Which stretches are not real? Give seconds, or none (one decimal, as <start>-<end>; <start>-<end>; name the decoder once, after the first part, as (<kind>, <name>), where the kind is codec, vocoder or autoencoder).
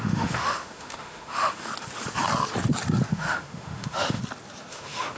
0.0-1.7 (autoencoder, DAC-VAE); 3.1-4.2; 4.7-5.2